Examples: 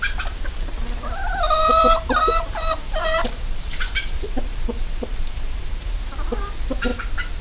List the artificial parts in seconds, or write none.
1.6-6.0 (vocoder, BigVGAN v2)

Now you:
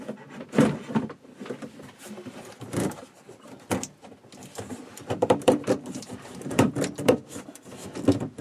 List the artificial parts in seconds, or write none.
4.9-6.7 (vocoder, BigVGAN v2)

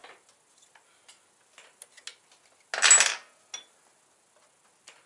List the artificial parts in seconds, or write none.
none

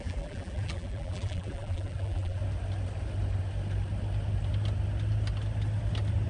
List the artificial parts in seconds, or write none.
0.0-2.4 (vocoder, BigVGAN v2)

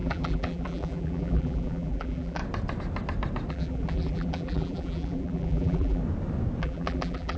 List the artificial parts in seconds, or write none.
0.0-2.4 (vocoder, BigVGAN v2); 3.5-6.0; 6.6-7.4